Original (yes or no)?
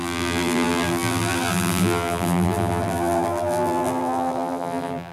no